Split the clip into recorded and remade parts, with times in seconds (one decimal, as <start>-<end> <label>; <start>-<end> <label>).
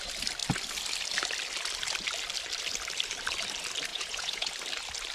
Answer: 0.0-3.9 recorded; 3.9-4.5 remade; 4.5-5.1 recorded